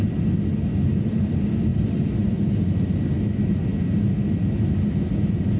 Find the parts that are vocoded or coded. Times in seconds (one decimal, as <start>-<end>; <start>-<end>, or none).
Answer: none